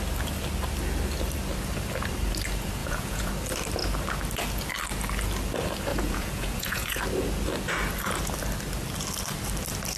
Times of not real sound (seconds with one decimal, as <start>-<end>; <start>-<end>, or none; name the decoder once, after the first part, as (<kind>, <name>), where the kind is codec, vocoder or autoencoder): 2.8-3.3 (vocoder, Vocos); 5.9-7.0